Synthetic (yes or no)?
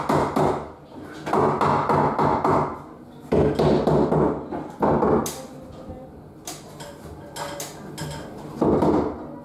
no